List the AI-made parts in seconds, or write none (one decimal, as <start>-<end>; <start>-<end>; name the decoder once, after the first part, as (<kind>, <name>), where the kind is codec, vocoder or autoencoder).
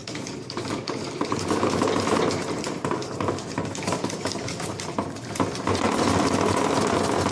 0.0-1.8 (codec, DAC); 3.0-4.7